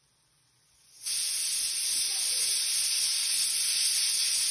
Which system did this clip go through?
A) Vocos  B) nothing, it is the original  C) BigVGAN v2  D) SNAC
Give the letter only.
B